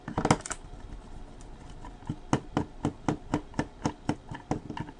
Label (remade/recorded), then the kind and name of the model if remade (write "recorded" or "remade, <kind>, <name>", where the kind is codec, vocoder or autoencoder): recorded